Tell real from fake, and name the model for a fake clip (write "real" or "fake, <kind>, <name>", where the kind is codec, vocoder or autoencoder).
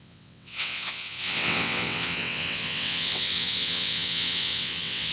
fake, vocoder, WaveNeXt